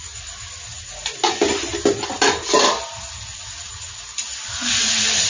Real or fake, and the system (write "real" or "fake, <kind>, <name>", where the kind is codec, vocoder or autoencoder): real